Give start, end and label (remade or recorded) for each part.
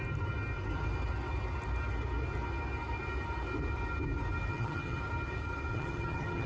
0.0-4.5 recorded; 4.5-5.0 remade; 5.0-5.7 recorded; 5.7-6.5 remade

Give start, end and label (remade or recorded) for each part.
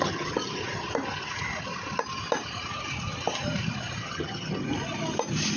0.0-0.6 remade; 0.6-4.0 recorded; 4.0-4.7 remade; 4.7-5.6 recorded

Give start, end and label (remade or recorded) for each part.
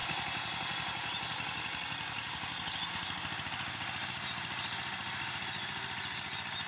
0.0-6.7 recorded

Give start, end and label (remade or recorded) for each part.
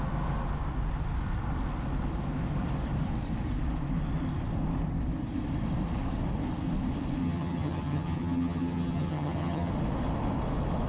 0.0-7.2 recorded; 7.2-9.7 remade; 9.7-10.9 recorded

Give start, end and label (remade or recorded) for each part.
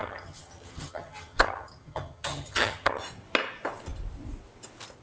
0.0-3.0 remade; 3.0-5.0 recorded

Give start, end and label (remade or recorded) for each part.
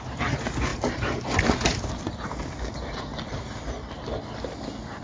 0.0-5.0 recorded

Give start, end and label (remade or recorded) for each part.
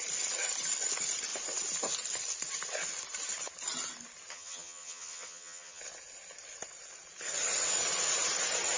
0.0-4.3 recorded; 4.3-5.8 remade; 5.8-8.8 recorded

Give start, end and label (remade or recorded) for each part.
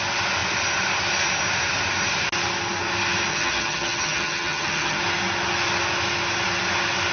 0.0-3.3 recorded; 3.3-5.0 remade; 5.0-7.1 recorded